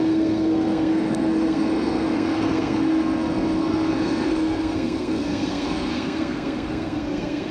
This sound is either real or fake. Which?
fake